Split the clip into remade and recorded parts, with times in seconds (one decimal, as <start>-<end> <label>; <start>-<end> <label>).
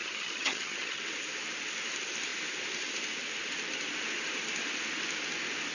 0.0-1.0 remade; 1.0-5.7 recorded